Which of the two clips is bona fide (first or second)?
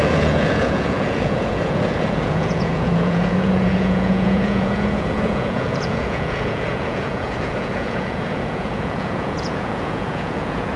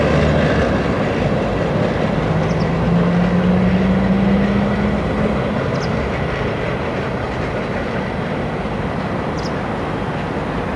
second